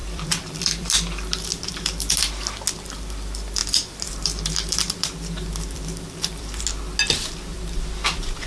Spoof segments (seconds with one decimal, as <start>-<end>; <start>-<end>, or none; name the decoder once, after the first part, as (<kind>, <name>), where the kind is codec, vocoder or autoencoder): 0.0-2.2 (vocoder, BigVGAN v2); 3.6-6.6; 7.5-8.5